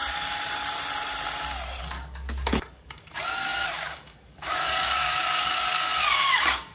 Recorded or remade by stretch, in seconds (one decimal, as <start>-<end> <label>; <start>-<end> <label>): 0.0-1.8 recorded; 1.8-6.7 remade